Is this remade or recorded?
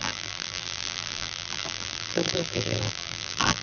remade